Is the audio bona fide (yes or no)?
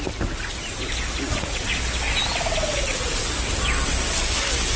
yes